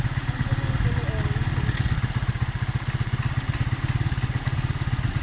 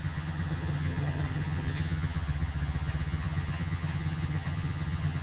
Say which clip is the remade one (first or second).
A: second